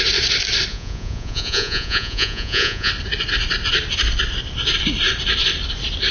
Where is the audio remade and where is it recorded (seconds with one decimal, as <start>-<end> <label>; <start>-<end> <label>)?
0.0-0.7 recorded; 0.7-2.9 remade; 2.9-6.1 recorded